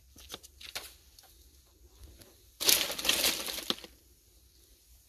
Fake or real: real